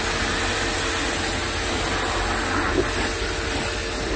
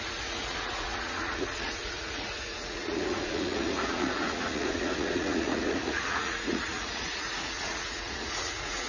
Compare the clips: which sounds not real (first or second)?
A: second